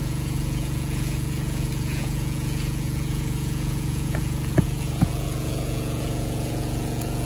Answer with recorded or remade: remade